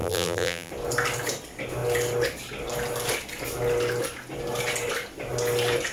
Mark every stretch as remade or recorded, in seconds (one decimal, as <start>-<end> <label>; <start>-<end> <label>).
0.0-0.7 remade; 0.7-5.9 recorded